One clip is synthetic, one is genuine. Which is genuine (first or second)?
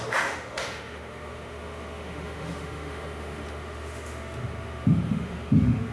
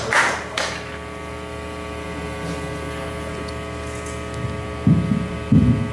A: second